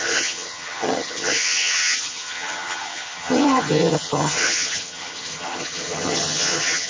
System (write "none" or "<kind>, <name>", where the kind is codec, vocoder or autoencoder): vocoder, HiFi-GAN